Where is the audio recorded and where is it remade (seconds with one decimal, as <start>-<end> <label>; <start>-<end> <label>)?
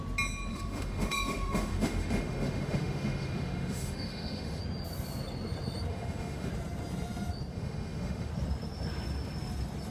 0.0-0.5 recorded; 0.5-4.6 remade; 4.6-5.9 recorded; 5.9-6.5 remade; 6.5-7.5 recorded; 7.5-8.3 remade; 8.3-9.9 recorded